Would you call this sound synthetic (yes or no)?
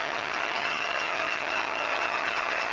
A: yes